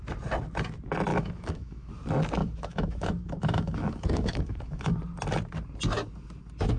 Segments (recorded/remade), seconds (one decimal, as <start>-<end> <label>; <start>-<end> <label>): 0.0-1.1 recorded; 1.1-1.9 remade; 1.9-2.4 recorded; 2.4-5.0 remade; 5.0-6.8 recorded